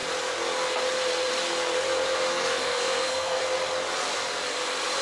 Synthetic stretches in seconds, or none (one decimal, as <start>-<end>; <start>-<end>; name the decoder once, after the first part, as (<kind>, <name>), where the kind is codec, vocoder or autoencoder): 2.3-3.4 (codec, SNAC)